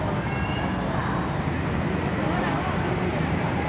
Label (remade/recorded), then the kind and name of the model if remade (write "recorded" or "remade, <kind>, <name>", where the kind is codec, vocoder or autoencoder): recorded